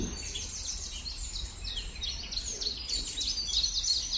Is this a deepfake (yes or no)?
no